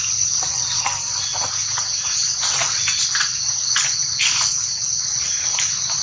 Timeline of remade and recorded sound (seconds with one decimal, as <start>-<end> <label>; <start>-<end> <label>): 0.0-6.0 recorded